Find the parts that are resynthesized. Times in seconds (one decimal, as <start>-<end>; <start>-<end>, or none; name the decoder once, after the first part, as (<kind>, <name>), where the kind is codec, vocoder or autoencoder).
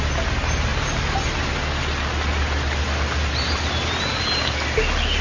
none